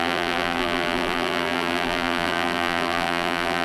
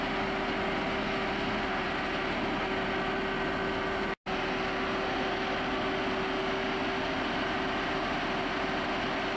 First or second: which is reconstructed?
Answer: first